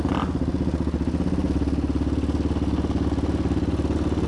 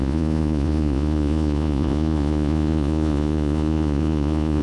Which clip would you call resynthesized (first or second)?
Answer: second